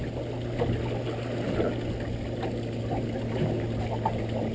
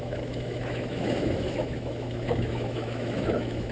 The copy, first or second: second